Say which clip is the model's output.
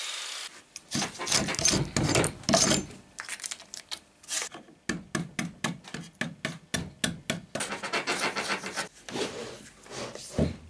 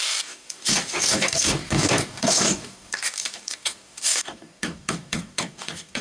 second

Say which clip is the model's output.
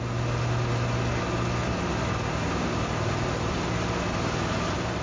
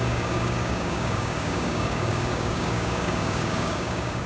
second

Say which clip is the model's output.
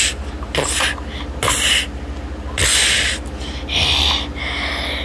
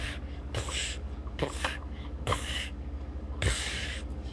second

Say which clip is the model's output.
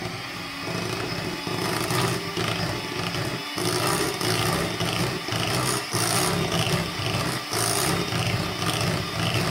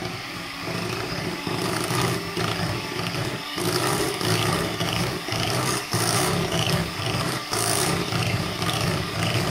second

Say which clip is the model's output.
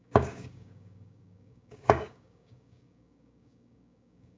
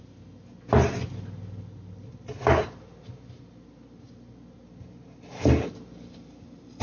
first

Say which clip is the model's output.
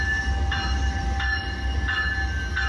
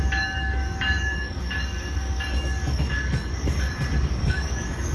second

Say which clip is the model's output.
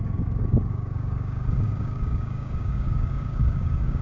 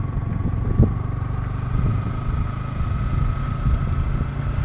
first